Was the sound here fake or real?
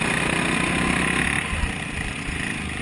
real